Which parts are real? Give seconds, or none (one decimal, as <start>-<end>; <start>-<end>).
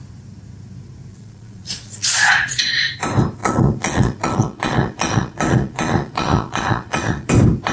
0.0-1.1; 2.9-3.4; 7.3-7.7